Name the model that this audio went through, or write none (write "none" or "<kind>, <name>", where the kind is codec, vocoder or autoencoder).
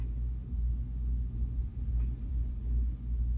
none